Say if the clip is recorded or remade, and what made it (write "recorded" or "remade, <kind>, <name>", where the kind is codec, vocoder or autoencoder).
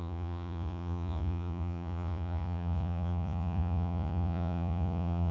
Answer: remade, vocoder, Vocos